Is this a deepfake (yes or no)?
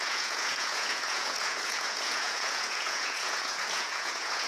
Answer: yes